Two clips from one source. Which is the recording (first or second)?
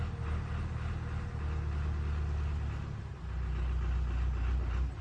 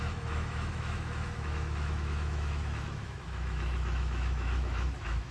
first